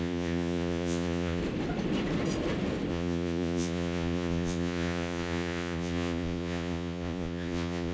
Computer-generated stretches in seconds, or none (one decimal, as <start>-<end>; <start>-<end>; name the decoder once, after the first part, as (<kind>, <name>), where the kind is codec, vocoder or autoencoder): 0.0-1.4 (vocoder, Vocos); 2.9-7.9